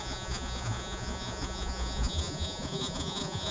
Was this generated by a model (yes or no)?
yes